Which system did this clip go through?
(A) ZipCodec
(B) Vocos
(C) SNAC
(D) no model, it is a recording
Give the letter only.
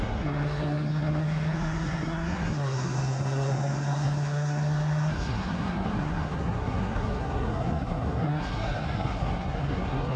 C